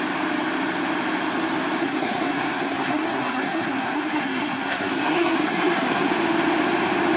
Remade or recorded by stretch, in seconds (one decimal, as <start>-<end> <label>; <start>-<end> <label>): 0.0-1.8 recorded; 1.8-6.1 remade; 6.1-7.2 recorded